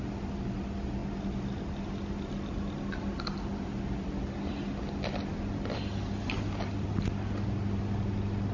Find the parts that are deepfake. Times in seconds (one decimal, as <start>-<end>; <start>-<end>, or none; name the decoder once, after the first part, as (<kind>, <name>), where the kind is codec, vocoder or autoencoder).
none